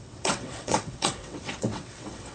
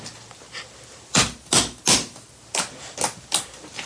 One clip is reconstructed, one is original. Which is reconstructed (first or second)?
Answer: first